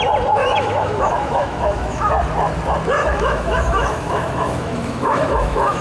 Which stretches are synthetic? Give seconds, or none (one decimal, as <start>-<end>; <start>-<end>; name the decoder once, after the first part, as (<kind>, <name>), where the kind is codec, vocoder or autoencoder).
0.4-2.1 (autoencoder, DAC-VAE); 3.0-5.8